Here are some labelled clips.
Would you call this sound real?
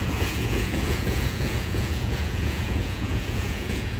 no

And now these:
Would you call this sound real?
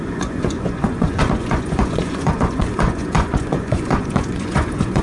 no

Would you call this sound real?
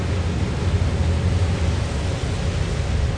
yes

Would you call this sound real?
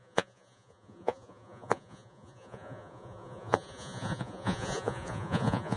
no